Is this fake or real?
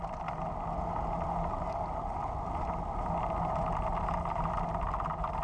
real